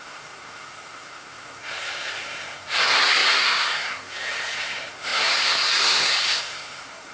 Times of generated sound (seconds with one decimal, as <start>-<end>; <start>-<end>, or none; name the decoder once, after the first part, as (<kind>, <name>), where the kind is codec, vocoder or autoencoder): 0.0-7.1 (codec, SNAC)